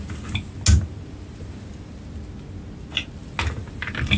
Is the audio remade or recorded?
recorded